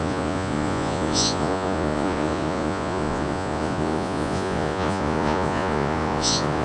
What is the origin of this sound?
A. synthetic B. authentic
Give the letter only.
A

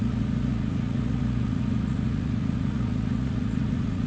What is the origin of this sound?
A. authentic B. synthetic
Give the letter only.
B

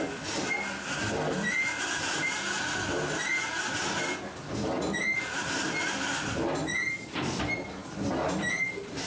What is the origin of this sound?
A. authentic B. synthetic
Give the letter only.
A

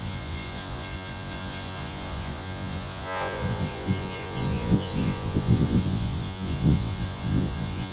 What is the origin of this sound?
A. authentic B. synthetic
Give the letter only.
B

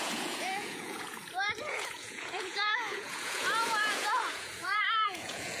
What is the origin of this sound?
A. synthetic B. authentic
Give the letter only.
A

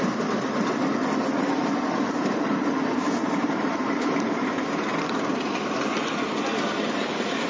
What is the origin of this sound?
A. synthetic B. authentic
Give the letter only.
B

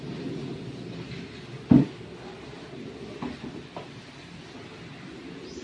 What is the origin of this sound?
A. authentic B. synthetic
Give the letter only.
A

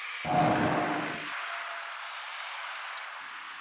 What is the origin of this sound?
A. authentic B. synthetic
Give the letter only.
A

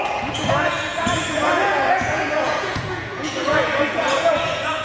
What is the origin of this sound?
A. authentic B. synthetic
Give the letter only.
B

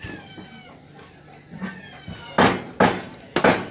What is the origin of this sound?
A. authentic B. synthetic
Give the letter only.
A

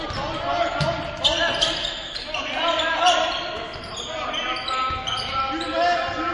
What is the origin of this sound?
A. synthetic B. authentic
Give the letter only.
B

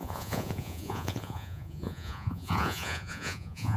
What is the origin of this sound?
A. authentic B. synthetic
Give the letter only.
B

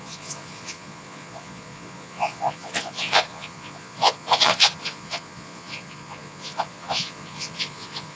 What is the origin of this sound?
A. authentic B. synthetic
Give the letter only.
B